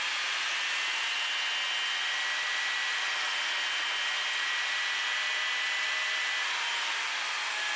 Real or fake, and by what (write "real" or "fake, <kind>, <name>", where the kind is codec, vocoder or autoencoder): real